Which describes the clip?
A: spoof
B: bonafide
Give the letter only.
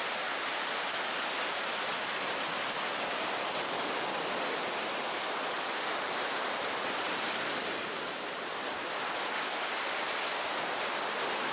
A